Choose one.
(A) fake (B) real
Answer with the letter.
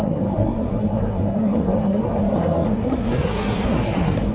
A